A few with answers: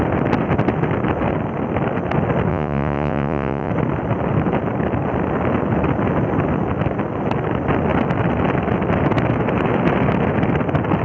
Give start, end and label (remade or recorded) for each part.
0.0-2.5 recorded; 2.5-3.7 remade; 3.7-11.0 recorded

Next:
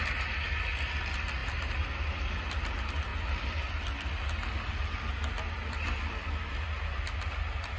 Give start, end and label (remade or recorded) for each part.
0.0-7.8 recorded

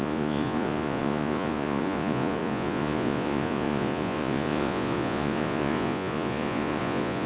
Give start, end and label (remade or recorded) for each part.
0.0-7.3 remade

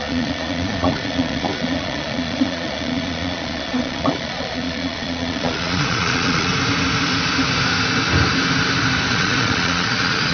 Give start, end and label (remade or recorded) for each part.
0.0-6.5 remade; 6.5-9.1 recorded; 9.1-10.3 remade

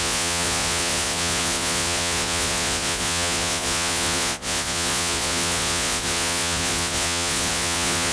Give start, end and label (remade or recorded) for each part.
0.0-8.1 remade

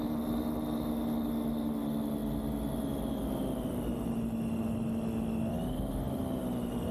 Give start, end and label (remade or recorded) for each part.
0.0-6.9 recorded

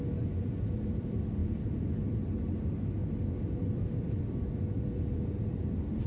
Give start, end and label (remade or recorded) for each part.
0.0-6.1 recorded